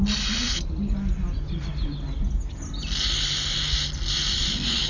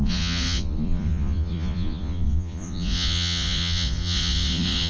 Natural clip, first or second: first